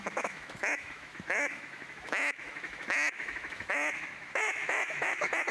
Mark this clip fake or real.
fake